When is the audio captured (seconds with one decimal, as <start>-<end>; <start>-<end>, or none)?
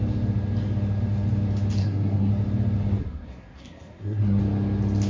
0.0-1.8; 2.3-3.0; 4.4-5.1